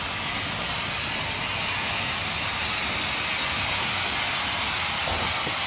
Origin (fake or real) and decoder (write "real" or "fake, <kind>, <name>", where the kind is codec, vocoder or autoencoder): real